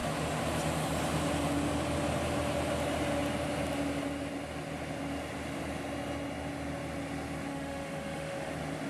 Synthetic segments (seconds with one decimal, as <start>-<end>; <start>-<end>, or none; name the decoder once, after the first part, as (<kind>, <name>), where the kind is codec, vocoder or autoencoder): 7.5-8.5 (autoencoder, DAC-VAE)